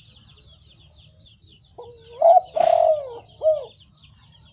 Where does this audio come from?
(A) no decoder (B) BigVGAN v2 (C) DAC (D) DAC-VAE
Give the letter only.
A